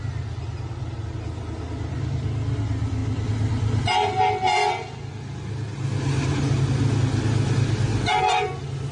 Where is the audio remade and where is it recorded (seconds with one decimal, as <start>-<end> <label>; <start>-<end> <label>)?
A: 0.0-8.9 recorded